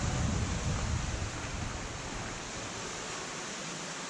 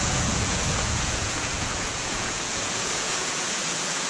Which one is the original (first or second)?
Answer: first